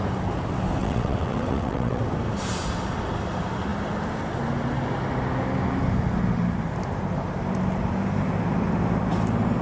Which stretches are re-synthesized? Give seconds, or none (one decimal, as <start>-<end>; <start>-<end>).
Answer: 0.8-2.0